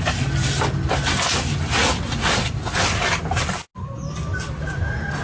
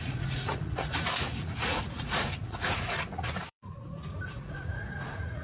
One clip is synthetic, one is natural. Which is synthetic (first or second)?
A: second